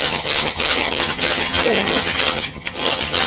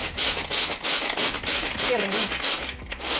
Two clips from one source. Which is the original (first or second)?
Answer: second